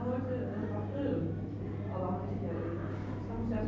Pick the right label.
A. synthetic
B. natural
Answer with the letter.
B